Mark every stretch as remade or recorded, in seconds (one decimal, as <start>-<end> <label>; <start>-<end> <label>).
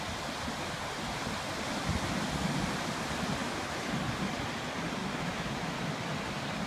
0.0-3.4 recorded; 3.4-3.9 remade; 3.9-5.0 recorded; 5.0-5.8 remade; 5.8-6.7 recorded